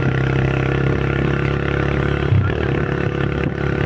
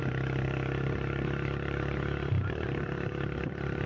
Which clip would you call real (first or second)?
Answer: first